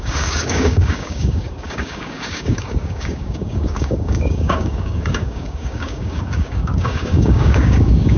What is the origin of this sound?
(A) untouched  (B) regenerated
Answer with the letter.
B